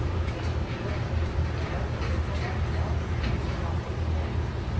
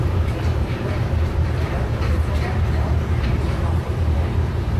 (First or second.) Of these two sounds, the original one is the first